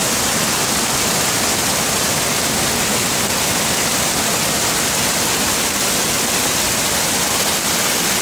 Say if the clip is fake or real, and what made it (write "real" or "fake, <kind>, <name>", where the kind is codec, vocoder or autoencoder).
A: real